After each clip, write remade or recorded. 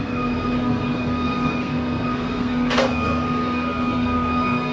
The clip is remade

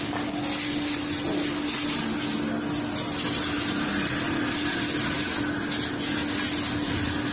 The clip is recorded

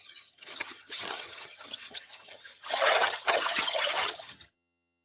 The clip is remade